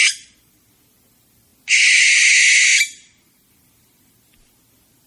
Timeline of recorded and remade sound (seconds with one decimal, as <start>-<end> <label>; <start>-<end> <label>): 0.0-5.1 recorded